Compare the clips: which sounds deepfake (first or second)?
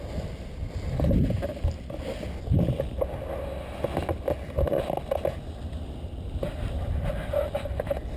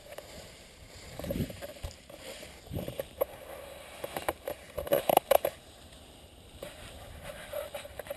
second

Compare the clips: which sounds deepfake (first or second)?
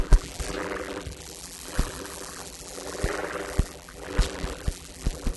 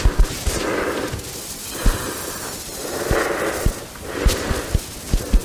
first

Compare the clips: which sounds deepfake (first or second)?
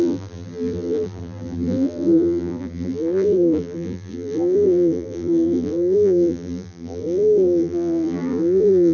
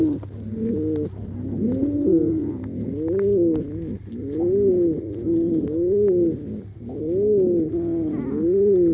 first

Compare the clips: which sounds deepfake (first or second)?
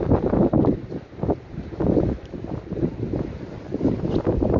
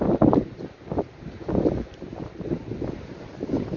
first